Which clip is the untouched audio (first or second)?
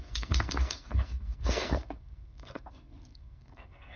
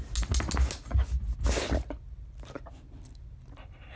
second